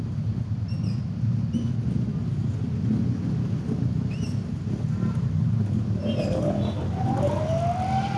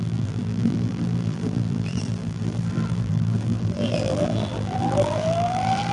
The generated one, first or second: second